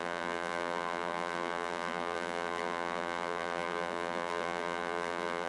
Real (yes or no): no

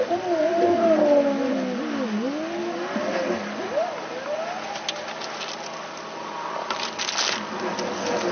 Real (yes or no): yes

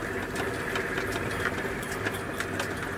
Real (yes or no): yes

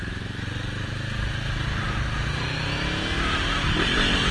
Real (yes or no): yes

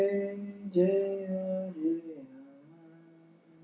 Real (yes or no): yes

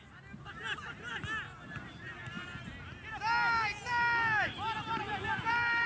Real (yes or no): yes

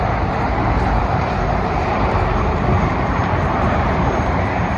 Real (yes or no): no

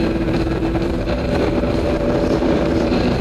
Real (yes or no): no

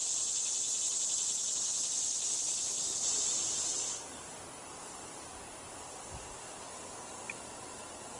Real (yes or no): no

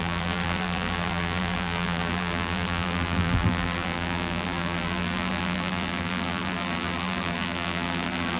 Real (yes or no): no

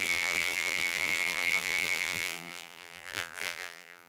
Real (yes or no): no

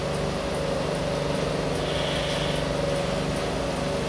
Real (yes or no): yes